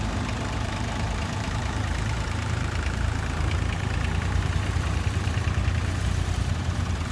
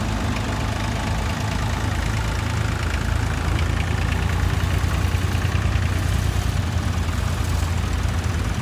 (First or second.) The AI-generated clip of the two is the first